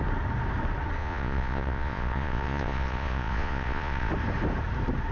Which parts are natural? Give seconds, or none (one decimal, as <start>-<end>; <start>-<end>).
0.0-1.0; 4.1-5.1